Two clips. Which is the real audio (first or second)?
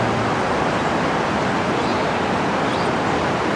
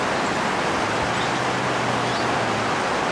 second